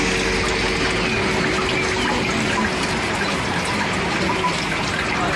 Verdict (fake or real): real